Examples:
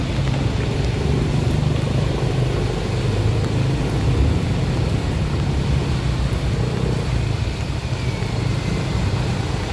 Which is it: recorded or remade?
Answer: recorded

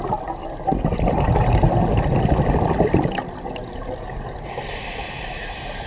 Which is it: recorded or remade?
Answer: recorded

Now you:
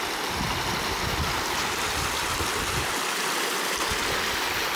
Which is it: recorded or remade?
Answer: recorded